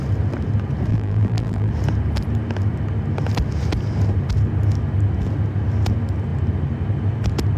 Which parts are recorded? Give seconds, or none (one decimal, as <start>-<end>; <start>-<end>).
0.0-0.9; 1.7-7.6